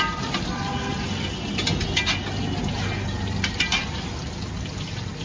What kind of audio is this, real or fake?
real